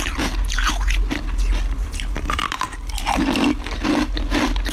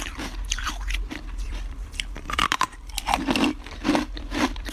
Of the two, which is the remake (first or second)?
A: second